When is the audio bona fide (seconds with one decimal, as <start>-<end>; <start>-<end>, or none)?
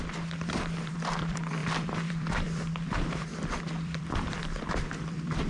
none